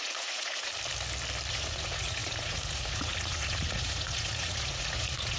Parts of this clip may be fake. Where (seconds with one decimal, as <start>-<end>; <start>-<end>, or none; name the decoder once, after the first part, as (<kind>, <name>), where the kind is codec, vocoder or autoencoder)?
0.0-0.7 (vocoder, Vocos); 1.5-5.4